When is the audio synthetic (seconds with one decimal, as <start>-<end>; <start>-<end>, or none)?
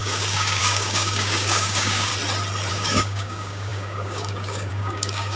0.0-2.1; 2.7-5.4